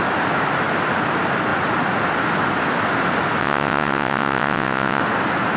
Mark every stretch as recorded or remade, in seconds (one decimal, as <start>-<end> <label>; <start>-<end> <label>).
0.0-3.4 recorded; 3.4-5.0 remade; 5.0-5.6 recorded